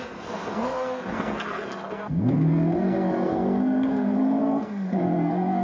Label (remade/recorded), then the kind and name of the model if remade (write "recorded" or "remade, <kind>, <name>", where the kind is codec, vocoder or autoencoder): remade, codec, SNAC